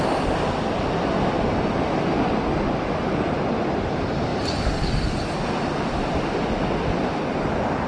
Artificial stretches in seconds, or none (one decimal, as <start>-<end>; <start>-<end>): none